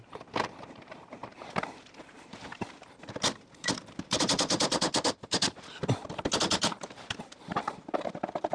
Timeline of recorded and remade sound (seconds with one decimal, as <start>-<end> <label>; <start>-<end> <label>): 0.0-5.8 remade; 5.8-6.6 recorded; 6.6-8.5 remade